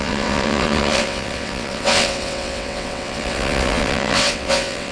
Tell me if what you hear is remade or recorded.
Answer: remade